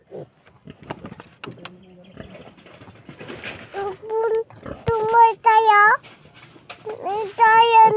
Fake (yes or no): no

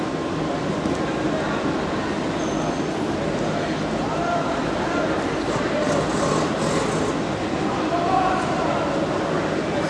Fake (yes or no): no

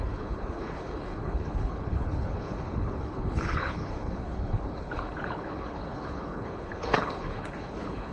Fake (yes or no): yes